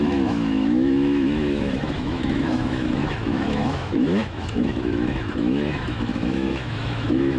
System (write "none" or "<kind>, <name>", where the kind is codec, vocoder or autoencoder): autoencoder, DAC-VAE